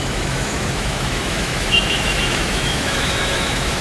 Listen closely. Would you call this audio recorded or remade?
remade